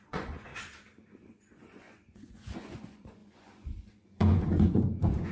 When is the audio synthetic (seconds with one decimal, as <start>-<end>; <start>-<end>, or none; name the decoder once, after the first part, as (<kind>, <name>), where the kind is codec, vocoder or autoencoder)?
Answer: 0.0-0.5 (vocoder, Vocos); 1.2-5.3